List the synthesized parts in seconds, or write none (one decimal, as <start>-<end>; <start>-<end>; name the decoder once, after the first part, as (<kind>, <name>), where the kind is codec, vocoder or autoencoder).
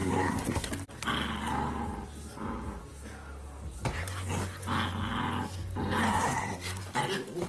0.0-0.7 (codec, SNAC); 6.1-6.8